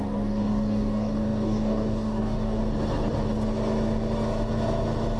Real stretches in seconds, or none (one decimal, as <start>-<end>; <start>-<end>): 2.6-5.2